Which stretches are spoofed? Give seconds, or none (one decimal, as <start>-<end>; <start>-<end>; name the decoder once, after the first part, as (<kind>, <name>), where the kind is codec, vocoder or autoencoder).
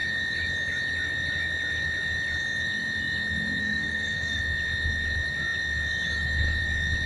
3.6-4.4 (codec, SNAC)